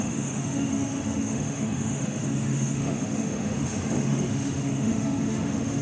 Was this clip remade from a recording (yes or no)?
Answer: yes